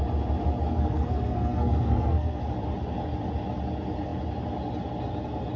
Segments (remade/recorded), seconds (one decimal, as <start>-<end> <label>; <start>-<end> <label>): 0.0-0.7 recorded; 0.7-2.4 remade; 2.4-5.6 recorded